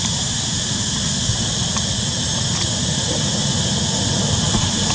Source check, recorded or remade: recorded